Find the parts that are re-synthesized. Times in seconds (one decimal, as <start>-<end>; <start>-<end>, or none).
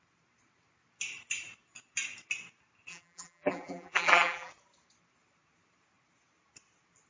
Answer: 2.9-4.5